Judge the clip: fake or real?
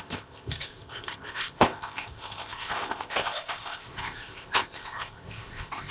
fake